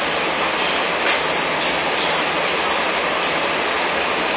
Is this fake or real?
real